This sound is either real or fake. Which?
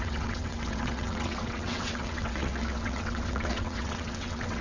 fake